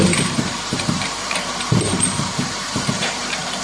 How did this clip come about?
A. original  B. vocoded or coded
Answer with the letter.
B